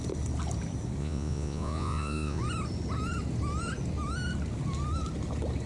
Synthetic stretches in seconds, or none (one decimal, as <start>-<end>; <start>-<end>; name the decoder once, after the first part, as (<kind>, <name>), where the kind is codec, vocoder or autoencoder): 1.0-2.4 (vocoder, Vocos)